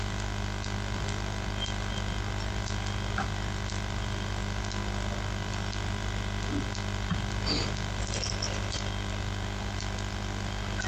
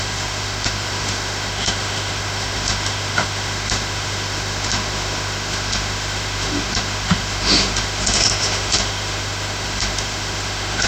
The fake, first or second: second